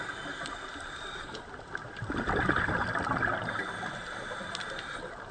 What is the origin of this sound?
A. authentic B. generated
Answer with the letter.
A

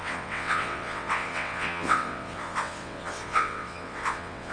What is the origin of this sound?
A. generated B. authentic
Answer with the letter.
A